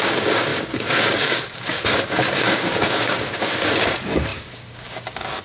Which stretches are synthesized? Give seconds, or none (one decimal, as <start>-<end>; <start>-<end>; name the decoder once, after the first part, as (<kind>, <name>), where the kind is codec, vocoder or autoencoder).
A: 0.0-5.4 (codec, DAC)